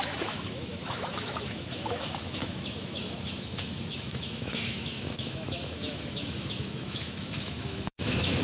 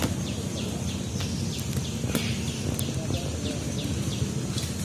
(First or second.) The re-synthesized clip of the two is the first